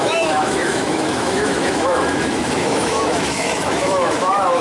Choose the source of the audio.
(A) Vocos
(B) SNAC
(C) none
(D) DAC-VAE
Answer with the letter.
D